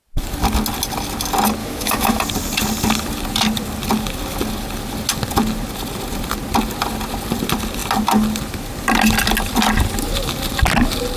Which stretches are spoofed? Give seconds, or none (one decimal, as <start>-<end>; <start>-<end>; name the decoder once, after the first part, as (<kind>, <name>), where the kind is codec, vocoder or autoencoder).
1.6-2.2 (autoencoder, DAC-VAE)